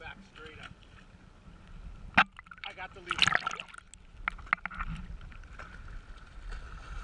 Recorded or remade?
recorded